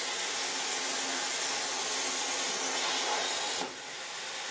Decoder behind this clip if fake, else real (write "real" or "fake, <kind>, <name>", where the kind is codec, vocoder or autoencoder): real